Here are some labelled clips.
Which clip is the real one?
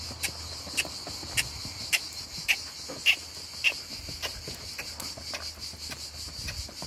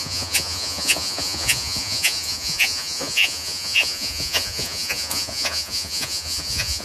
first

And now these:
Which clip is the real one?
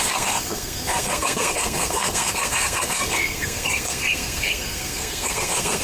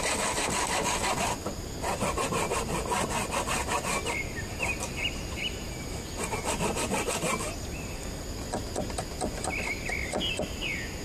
second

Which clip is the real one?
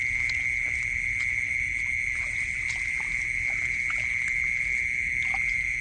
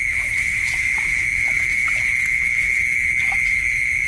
first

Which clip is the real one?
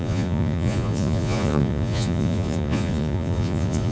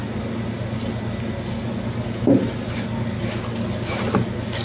second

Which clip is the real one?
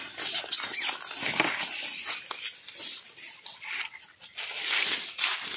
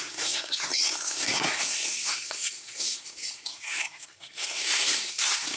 first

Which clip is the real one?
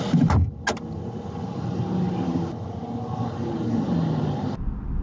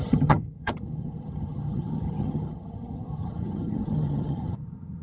first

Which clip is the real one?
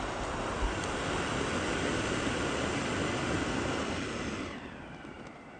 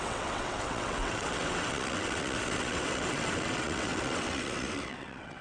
first